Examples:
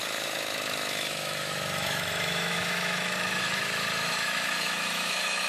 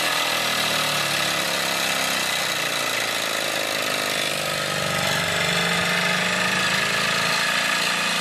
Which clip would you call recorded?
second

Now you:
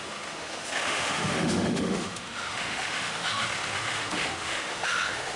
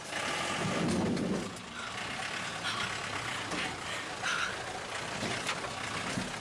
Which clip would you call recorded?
second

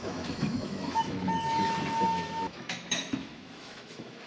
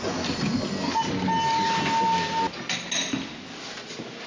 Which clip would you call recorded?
second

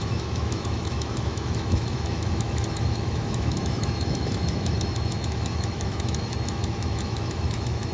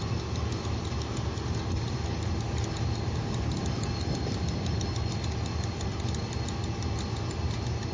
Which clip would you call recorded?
second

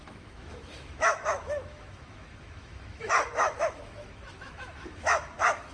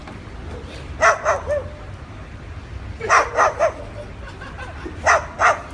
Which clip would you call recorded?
second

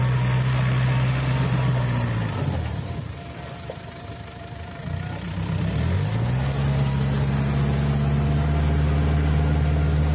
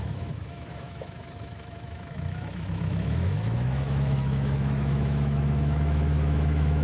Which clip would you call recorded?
first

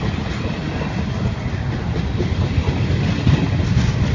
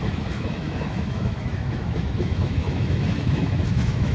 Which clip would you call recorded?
first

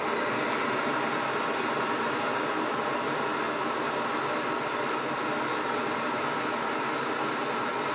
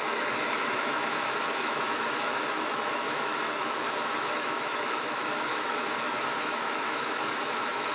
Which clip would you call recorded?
first